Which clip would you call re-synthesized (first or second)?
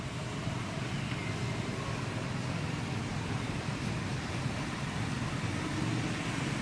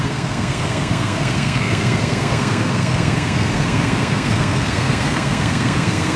second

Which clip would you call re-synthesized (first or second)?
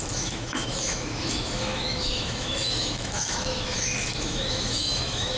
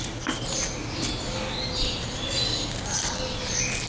first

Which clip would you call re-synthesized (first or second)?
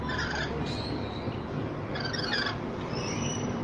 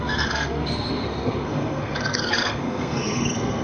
second